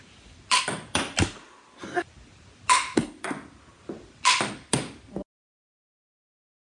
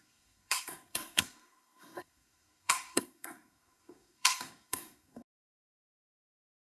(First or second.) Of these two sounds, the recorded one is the first